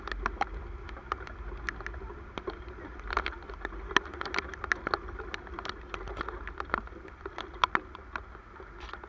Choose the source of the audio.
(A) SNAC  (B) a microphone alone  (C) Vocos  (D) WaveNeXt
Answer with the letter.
B